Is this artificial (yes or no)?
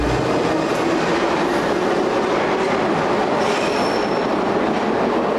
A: no